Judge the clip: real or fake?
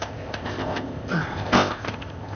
fake